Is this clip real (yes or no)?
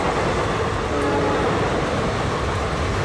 yes